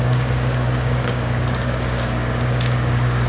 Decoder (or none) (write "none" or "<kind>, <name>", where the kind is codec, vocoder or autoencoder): codec, DAC